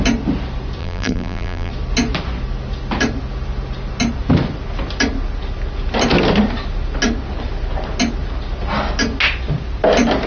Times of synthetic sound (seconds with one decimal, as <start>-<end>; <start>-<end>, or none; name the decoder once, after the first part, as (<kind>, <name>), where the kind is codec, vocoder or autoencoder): 0.8-1.7 (vocoder, BigVGAN v2)

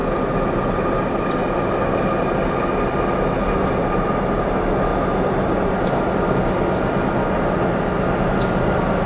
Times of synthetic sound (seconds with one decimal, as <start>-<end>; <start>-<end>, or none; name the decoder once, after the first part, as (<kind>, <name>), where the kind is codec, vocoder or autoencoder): 4.9-6.1 (vocoder, BigVGAN v2)

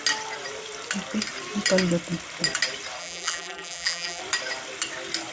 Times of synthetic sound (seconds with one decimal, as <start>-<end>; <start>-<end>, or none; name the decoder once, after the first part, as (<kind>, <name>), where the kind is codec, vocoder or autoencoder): 3.0-4.2 (vocoder, BigVGAN v2)

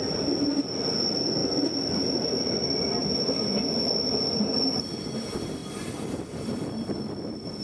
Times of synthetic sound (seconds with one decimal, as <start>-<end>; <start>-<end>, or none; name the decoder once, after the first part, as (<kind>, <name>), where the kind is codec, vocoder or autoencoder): none

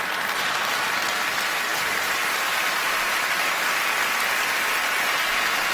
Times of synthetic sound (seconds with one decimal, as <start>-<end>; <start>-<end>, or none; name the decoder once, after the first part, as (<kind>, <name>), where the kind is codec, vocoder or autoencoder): 1.7-3.2 (vocoder, BigVGAN v2)

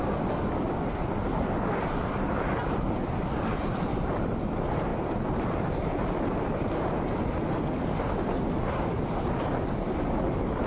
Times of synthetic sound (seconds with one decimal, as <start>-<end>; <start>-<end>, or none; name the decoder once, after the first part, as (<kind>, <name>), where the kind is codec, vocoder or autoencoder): none